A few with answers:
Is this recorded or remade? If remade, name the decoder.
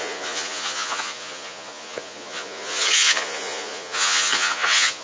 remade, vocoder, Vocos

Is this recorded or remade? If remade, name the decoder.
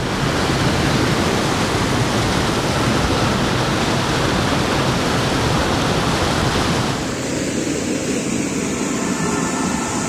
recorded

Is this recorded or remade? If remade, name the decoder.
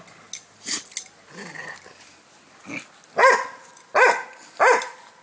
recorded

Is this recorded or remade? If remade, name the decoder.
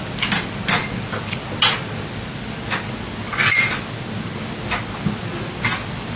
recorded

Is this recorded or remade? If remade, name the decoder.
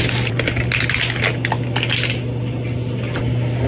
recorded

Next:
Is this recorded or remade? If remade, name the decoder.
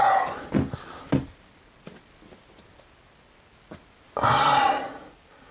recorded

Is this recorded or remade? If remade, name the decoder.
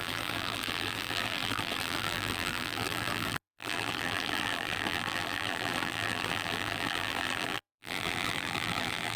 remade, vocoder, BigVGAN v2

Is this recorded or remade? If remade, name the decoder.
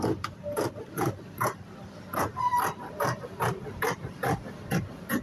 remade, vocoder, BigVGAN v2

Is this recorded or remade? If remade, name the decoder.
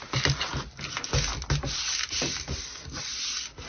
recorded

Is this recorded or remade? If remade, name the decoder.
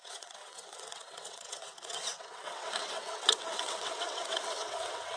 remade, vocoder, WaveNeXt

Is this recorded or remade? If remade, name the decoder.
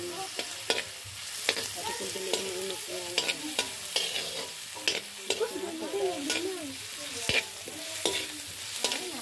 recorded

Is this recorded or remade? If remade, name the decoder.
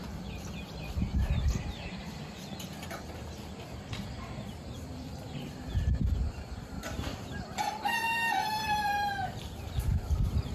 remade, vocoder, BigVGAN v2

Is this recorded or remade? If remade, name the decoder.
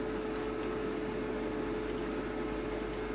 recorded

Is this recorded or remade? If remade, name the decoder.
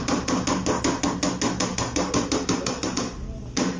recorded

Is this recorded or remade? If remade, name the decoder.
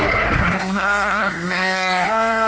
remade, codec, SNAC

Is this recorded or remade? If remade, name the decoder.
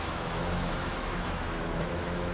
remade, autoencoder, DAC-VAE